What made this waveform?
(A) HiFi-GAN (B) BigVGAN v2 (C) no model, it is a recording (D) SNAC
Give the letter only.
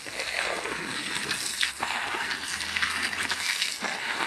D